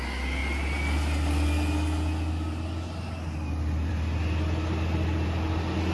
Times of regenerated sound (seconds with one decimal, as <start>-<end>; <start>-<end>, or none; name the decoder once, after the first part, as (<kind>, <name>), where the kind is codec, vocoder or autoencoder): none